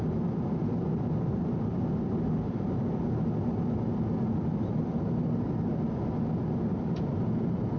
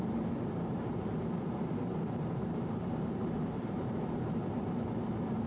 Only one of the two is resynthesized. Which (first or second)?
second